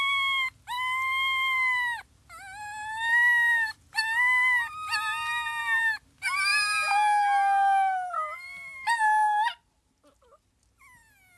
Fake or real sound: real